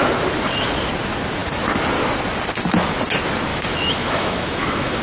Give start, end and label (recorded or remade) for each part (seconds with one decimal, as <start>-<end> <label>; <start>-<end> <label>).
0.0-3.5 recorded; 3.5-5.0 remade